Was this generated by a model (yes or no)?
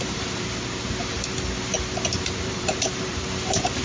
yes